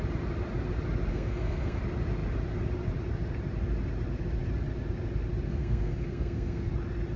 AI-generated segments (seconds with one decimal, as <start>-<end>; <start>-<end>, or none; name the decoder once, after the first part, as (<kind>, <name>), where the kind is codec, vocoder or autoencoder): 1.1-1.8 (codec, SNAC); 5.5-6.7